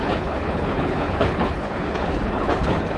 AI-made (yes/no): yes